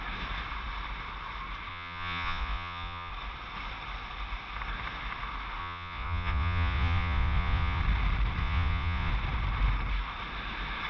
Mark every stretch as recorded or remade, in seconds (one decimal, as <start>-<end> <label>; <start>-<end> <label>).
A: 0.0-1.7 recorded; 1.7-3.1 remade; 3.1-5.6 recorded; 5.6-7.8 remade; 7.8-8.4 recorded; 8.4-9.1 remade; 9.1-10.9 recorded